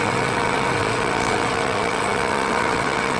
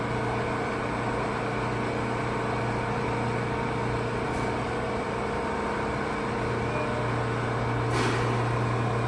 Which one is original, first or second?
second